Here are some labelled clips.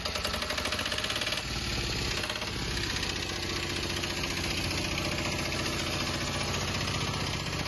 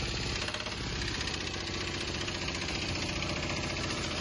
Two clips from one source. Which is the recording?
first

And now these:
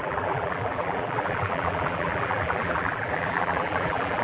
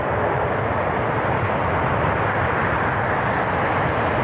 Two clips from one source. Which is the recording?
second